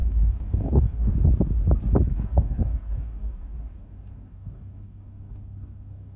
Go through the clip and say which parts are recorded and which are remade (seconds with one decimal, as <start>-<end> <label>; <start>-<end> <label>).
0.0-1.1 remade; 1.1-2.1 recorded; 2.1-6.2 remade